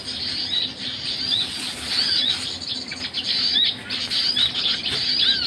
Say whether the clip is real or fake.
real